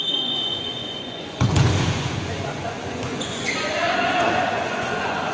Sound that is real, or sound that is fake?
fake